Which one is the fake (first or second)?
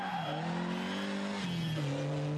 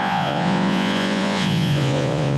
second